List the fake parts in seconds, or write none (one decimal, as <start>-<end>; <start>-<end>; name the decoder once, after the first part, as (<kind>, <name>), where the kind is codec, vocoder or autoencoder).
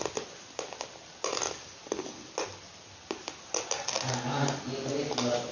5.0-5.5 (vocoder, BigVGAN v2)